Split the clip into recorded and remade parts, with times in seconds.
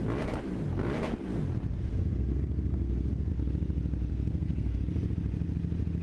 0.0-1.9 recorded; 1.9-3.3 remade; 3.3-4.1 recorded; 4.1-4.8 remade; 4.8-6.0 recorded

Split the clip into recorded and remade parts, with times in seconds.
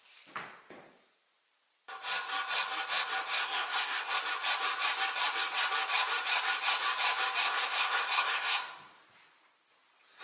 0.0-3.4 recorded; 3.4-4.2 remade; 4.2-7.4 recorded; 7.4-8.6 remade; 8.6-10.2 recorded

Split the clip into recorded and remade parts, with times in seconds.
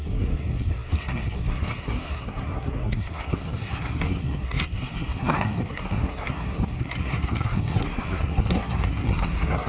0.0-9.7 remade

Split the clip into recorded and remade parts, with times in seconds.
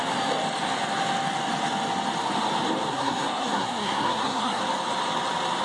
0.0-2.9 recorded; 2.9-4.6 remade; 4.6-5.6 recorded